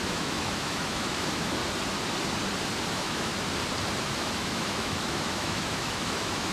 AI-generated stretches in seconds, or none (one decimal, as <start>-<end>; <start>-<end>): 0.0-1.6; 2.9-3.3; 4.0-6.5